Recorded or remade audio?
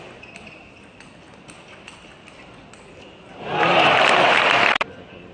recorded